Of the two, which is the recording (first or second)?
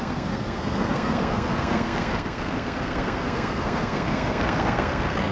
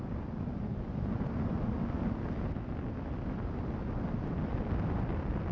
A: second